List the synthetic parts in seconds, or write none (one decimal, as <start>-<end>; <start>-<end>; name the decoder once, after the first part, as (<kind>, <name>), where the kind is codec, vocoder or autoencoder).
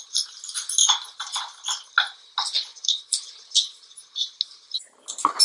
0.8-1.9 (vocoder, BigVGAN v2); 2.7-3.3